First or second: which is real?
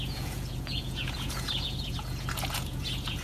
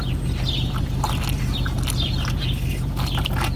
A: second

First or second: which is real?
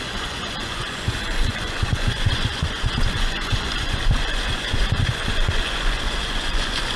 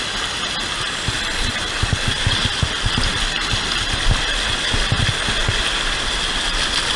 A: second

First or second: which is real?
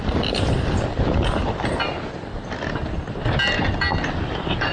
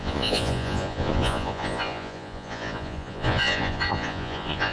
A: first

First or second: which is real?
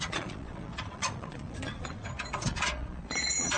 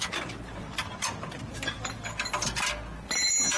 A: second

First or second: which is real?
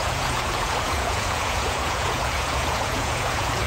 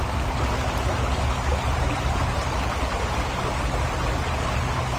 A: second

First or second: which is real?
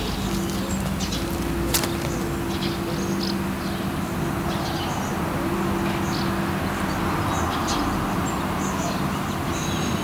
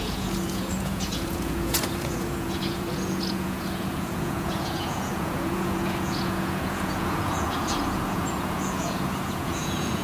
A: first